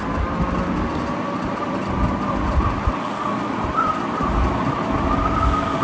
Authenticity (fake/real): real